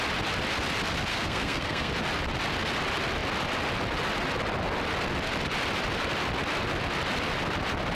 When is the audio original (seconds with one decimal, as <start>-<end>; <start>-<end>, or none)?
0.0-1.1; 1.9-7.9

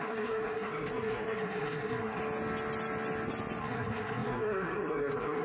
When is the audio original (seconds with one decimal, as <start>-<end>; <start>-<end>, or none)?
2.2-3.6

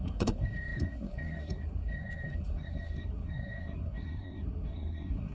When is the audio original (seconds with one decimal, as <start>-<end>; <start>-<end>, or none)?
none

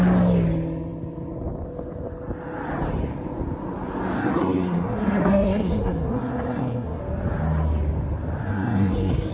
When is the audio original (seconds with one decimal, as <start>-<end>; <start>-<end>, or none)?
0.0-4.2; 7.0-8.4

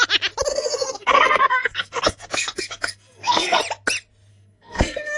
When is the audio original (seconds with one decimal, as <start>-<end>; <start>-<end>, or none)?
0.0-0.5; 3.6-4.3

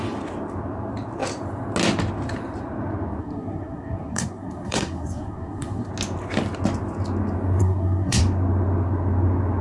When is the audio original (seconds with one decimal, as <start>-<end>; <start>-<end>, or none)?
0.0-3.2; 5.9-7.6; 8.2-9.6